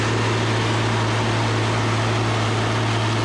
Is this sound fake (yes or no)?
no